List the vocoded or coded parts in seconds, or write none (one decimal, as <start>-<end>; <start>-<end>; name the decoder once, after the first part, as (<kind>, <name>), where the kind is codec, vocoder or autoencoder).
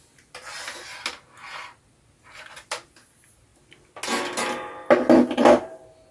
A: none